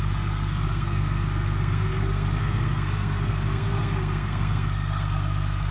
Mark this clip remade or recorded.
remade